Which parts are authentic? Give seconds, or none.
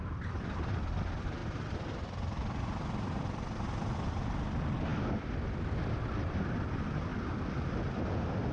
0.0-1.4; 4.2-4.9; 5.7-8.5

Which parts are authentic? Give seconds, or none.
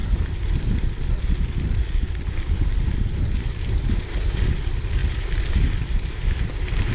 4.1-5.0; 6.3-6.9